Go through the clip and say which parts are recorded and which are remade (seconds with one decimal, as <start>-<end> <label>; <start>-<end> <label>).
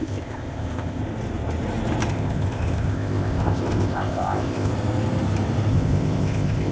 0.0-1.0 remade; 1.0-2.1 recorded; 2.1-4.7 remade; 4.7-5.7 recorded; 5.7-6.7 remade